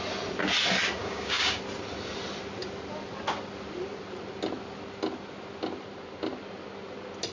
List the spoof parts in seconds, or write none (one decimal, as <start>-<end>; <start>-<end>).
1.0-1.6

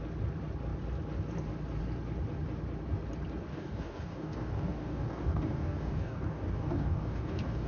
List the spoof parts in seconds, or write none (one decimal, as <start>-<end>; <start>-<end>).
3.5-7.7

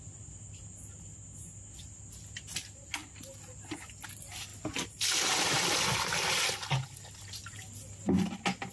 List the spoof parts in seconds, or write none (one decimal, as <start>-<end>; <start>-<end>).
none

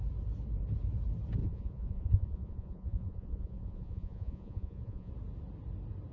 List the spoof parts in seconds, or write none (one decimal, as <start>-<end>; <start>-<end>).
1.4-5.1

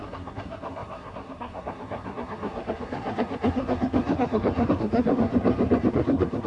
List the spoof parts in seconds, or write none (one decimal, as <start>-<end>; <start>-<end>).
0.0-5.3; 5.9-6.5

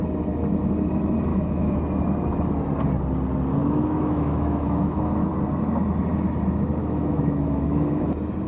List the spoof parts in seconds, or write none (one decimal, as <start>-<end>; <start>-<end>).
1.3-1.8; 3.6-5.3; 6.8-8.1